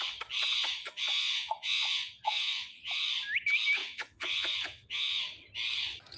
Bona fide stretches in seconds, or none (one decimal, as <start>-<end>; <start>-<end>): 0.0-0.8; 3.0-3.8; 5.2-6.2